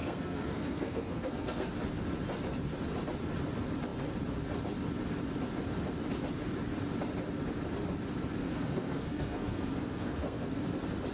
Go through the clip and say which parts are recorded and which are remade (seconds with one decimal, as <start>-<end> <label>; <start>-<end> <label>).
0.0-1.7 remade; 1.7-8.4 recorded; 8.4-10.5 remade; 10.5-11.1 recorded